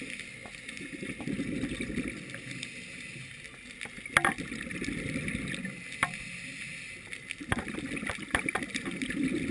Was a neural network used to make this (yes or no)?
no